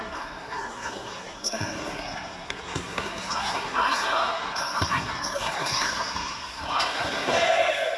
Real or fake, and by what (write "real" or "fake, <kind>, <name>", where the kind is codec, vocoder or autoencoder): fake, codec, SNAC